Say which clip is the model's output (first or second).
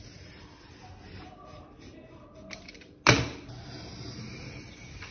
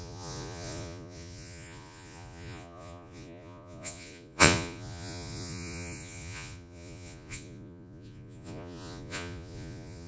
second